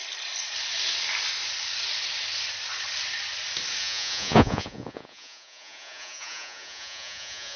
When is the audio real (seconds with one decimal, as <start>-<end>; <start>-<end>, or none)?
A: 0.0-3.8